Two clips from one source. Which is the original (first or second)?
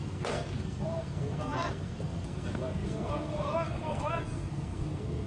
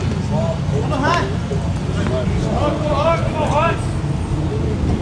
second